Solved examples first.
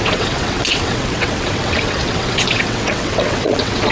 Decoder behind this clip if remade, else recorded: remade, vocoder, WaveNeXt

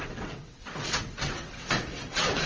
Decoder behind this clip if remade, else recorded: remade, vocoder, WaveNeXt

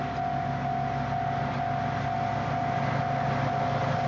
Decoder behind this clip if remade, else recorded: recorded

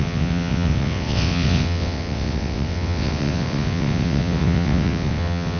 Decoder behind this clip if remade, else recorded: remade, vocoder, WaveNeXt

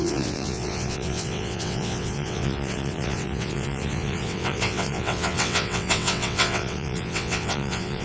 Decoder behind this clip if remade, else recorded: remade, vocoder, WaveNeXt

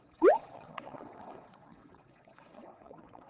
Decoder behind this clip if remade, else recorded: remade, vocoder, WaveNeXt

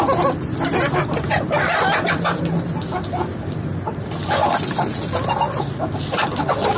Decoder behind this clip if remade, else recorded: recorded